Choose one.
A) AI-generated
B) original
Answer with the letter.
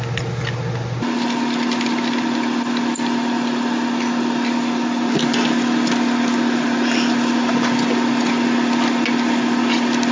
B